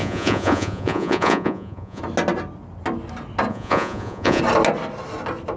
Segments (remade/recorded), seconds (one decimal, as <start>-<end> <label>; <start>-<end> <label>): 0.0-2.0 remade; 2.0-3.5 recorded; 3.5-4.4 remade; 4.4-5.6 recorded